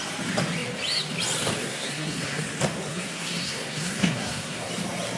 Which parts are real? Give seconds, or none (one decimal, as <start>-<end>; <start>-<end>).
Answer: 0.0-1.6; 2.4-2.9; 4.7-5.2